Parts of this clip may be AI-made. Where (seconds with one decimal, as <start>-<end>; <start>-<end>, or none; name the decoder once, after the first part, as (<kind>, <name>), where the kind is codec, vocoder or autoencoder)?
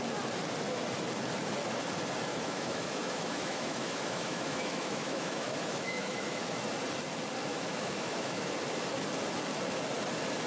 2.3-6.6 (autoencoder, DAC-VAE); 7.5-8.5